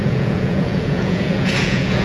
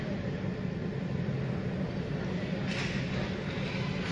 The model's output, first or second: first